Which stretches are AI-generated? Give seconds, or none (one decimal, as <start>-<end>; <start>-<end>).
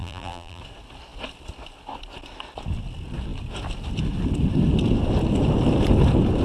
0.0-0.6